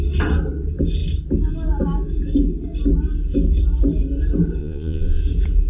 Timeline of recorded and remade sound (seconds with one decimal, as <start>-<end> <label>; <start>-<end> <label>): 0.0-4.6 recorded; 4.6-5.2 remade; 5.2-5.7 recorded